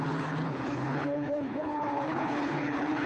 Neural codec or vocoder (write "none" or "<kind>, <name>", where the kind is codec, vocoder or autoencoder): codec, HILCodec